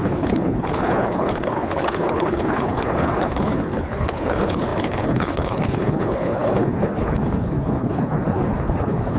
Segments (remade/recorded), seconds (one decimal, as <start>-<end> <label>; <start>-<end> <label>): 0.0-9.2 remade